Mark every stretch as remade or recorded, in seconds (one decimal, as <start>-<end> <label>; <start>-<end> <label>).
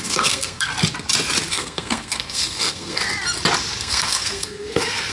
0.0-0.7 remade; 0.7-1.5 recorded; 1.5-3.0 remade; 3.0-3.8 recorded; 3.8-5.1 remade